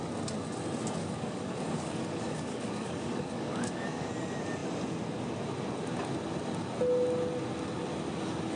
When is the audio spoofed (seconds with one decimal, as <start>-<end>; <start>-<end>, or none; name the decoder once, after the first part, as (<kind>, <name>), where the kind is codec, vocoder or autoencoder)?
1.0-4.1 (codec, DAC)